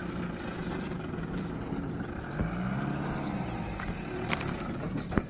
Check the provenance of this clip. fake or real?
real